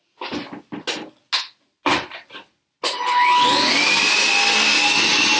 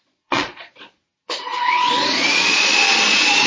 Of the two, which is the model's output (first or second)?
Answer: second